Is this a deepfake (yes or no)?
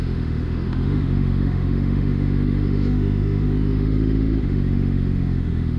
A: yes